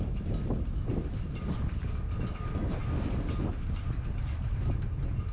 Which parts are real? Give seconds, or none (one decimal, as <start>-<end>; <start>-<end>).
0.0-5.3